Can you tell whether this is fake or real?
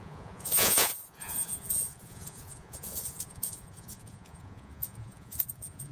fake